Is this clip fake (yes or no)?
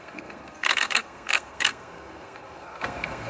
yes